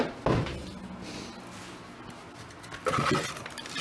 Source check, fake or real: real